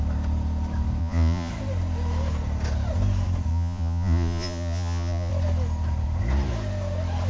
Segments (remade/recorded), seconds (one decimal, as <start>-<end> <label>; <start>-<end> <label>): 0.0-1.0 recorded; 1.0-1.5 remade; 1.5-3.5 recorded; 3.5-5.3 remade; 5.3-7.3 recorded